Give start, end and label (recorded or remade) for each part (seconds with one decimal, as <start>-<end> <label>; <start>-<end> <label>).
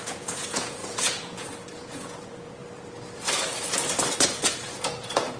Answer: 0.0-2.6 remade; 2.6-4.2 recorded; 4.2-5.4 remade